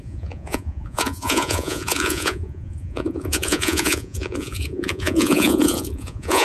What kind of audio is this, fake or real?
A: fake